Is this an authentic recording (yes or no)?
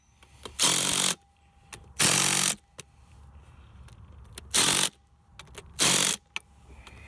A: yes